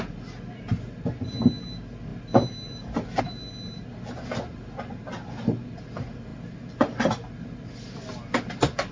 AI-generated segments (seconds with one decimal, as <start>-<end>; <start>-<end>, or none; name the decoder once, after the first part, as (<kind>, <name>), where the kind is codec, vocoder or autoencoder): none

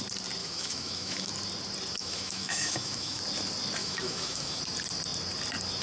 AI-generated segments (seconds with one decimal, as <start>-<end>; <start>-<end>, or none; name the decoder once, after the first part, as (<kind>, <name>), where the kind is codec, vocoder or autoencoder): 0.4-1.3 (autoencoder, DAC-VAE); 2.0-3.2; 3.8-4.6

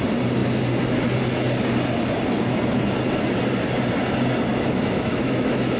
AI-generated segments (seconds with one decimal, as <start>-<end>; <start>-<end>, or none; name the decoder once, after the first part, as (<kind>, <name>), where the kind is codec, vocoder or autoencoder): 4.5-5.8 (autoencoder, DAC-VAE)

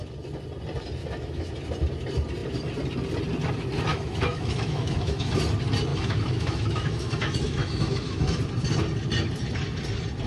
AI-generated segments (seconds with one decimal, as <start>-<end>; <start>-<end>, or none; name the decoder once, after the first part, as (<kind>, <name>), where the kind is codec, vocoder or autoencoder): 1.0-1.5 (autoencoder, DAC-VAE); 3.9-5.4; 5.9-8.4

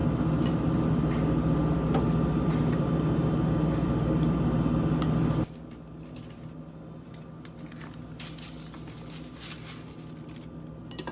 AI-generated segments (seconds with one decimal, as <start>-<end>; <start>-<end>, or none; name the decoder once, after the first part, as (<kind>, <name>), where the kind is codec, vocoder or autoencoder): none

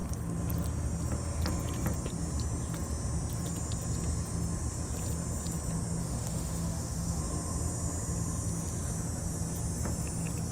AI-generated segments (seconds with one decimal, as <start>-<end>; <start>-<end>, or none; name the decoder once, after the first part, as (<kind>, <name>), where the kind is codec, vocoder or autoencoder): 6.0-7.2 (autoencoder, DAC-VAE)

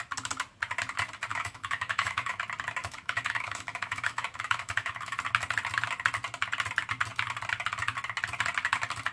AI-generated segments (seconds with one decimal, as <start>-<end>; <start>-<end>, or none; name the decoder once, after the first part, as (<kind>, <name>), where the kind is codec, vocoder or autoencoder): 1.3-2.4 (autoencoder, DAC-VAE); 2.8-5.2

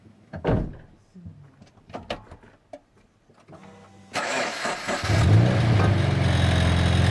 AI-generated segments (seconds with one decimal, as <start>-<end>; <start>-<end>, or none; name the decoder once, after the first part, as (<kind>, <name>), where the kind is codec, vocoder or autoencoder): 0.0-0.6 (autoencoder, DAC-VAE); 4.0-4.7